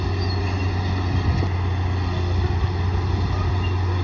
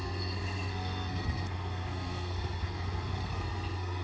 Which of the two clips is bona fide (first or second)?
first